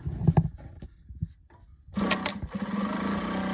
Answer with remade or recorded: recorded